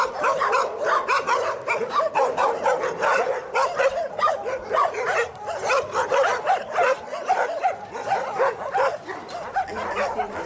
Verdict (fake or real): real